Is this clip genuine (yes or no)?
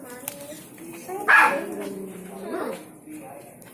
yes